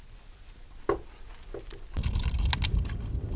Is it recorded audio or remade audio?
recorded